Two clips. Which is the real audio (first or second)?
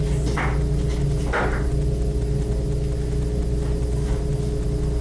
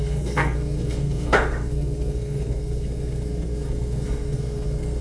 first